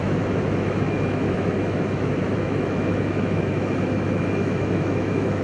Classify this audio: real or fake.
fake